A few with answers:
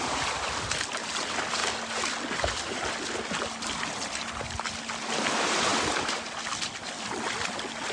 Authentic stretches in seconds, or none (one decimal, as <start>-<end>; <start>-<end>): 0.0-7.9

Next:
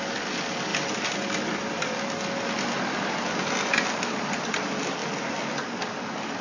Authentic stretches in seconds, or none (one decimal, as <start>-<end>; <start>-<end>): 0.0-6.4

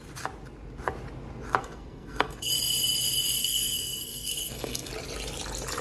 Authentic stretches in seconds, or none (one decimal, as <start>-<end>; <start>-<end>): 0.0-1.6; 2.5-3.4; 4.9-5.8

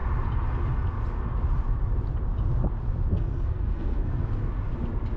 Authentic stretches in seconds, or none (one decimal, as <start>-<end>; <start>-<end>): 0.0-3.1; 4.4-5.2

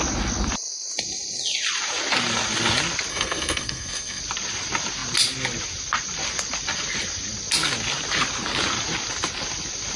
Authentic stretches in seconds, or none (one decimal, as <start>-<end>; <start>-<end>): 0.0-3.1; 4.2-10.0

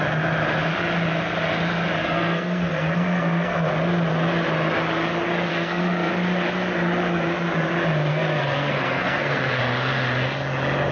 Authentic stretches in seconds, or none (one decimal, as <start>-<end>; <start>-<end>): 0.0-2.0; 3.7-5.5; 6.1-8.1; 9.6-10.9